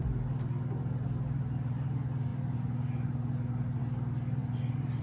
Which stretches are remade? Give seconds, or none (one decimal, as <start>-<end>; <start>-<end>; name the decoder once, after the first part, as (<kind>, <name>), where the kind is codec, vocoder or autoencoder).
none

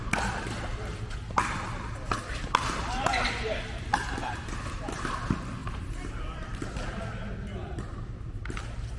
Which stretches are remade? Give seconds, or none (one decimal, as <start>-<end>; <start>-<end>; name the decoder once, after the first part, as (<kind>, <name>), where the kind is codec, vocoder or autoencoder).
none

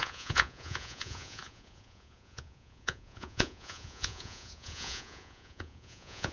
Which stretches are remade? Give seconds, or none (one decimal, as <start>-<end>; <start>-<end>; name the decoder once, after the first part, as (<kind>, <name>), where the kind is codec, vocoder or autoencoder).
0.0-6.3 (vocoder, Vocos)

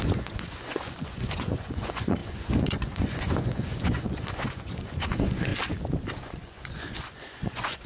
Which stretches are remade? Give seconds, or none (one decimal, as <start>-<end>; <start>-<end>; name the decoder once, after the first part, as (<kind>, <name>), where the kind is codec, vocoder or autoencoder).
0.0-5.5 (vocoder, Vocos); 6.2-7.9

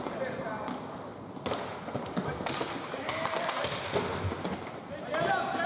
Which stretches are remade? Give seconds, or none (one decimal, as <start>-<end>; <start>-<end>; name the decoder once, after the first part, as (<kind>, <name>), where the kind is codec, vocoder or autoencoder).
none

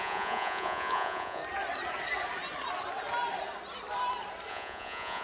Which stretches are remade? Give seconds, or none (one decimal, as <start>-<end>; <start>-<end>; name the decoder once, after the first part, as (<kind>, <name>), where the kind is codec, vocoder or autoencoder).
0.0-1.4 (vocoder, Vocos); 4.5-5.2

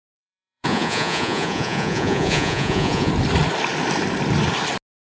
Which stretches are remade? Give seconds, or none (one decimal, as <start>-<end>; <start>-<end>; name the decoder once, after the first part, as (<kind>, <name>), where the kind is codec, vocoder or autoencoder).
0.0-3.1 (vocoder, Vocos)

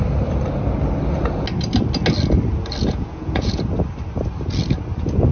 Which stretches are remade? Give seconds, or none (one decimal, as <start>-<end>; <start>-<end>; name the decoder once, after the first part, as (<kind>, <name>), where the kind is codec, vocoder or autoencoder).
2.8-3.6 (vocoder, Vocos)